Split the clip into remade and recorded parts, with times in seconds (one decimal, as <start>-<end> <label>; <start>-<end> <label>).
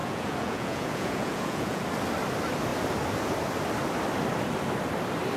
0.0-1.8 remade; 1.8-5.4 recorded